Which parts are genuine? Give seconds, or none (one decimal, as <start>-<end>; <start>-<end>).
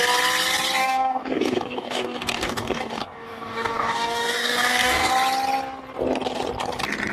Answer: 0.0-0.8; 5.1-7.1